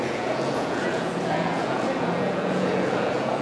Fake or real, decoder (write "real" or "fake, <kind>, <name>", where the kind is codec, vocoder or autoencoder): fake, vocoder, Vocos